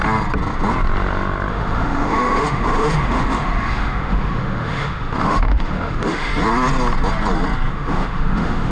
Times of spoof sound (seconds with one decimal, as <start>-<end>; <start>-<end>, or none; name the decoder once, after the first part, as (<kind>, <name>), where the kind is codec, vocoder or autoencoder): 1.5-6.3 (autoencoder, DAC-VAE); 7.7-8.7